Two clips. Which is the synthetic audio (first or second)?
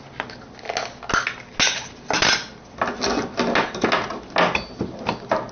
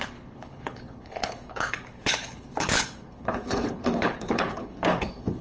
second